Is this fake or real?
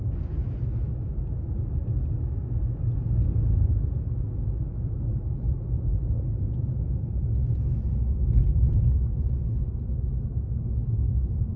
real